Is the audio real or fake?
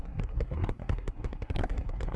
fake